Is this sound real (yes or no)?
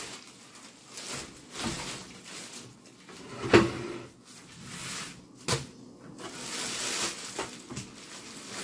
yes